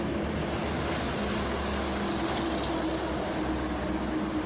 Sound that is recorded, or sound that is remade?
recorded